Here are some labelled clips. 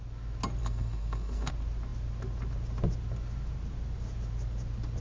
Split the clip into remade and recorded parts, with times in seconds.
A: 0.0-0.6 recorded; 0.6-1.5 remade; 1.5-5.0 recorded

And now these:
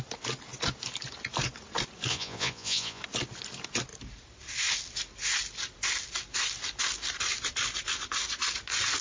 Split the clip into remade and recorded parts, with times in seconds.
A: 0.0-2.1 recorded; 2.1-3.0 remade; 3.0-9.0 recorded

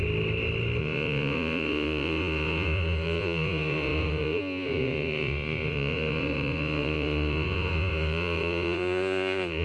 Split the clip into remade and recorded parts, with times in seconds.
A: 0.0-0.8 recorded; 0.8-9.6 remade

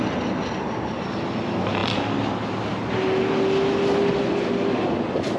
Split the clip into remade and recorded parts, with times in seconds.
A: 0.0-5.4 recorded

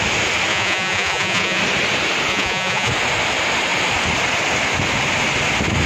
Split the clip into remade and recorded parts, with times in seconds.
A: 0.0-0.5 recorded; 0.5-1.6 remade; 1.6-2.3 recorded; 2.3-2.9 remade; 2.9-5.9 recorded

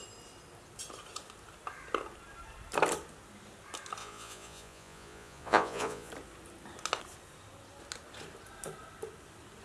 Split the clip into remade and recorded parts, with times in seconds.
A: 0.0-4.0 recorded; 4.0-6.1 remade; 6.1-9.6 recorded

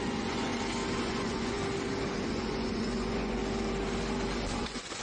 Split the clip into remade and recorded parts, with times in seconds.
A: 0.0-0.5 remade; 0.5-1.0 recorded; 1.0-1.6 remade; 1.6-2.3 recorded; 2.3-3.4 remade; 3.4-4.6 recorded; 4.6-5.0 remade